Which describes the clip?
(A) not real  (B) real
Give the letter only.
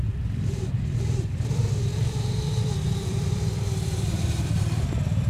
A